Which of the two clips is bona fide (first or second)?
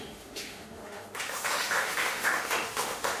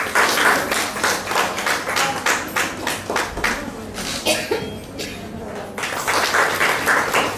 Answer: second